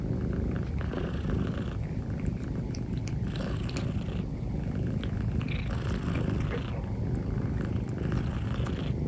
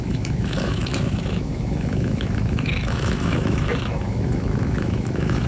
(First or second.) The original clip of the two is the first